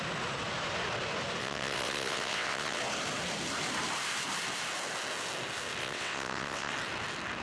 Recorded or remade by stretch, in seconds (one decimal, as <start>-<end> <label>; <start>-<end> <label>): 0.0-1.4 recorded; 1.4-2.8 remade; 2.8-5.8 recorded; 5.8-6.7 remade; 6.7-7.4 recorded